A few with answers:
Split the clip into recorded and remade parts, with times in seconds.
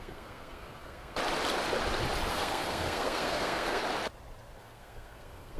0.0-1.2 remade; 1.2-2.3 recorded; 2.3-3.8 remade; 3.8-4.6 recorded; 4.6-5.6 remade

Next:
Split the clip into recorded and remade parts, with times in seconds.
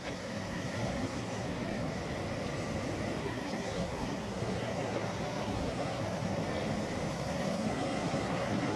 0.0-2.0 remade; 2.0-3.2 recorded; 3.2-6.4 remade; 6.4-7.1 recorded; 7.1-8.8 remade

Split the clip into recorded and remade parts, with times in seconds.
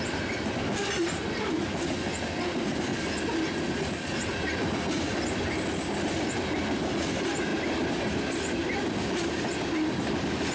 0.0-10.5 recorded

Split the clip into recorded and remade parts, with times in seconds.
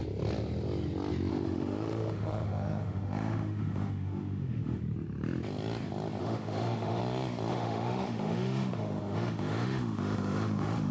0.0-1.3 recorded; 1.3-4.8 remade; 4.8-6.2 recorded; 6.2-7.0 remade; 7.0-7.5 recorded; 7.5-10.9 remade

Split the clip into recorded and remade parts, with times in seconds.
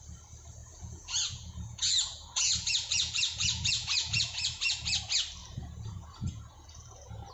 0.0-0.6 recorded; 0.6-5.0 remade; 5.0-5.4 recorded; 5.4-7.3 remade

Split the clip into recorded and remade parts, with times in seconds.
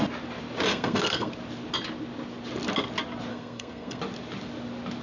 0.0-0.7 recorded; 0.7-1.3 remade; 1.3-3.3 recorded; 3.3-4.0 remade; 4.0-5.0 recorded